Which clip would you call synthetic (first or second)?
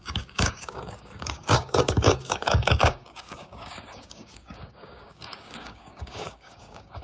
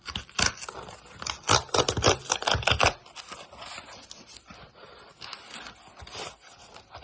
first